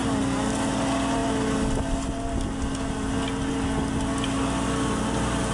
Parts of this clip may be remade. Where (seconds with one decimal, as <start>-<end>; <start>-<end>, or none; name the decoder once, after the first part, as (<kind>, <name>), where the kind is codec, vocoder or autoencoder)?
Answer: none